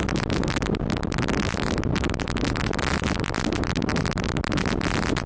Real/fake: real